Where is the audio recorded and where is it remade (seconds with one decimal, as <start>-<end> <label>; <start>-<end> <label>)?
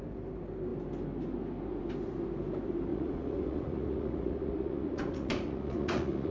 0.0-2.9 recorded; 2.9-6.3 remade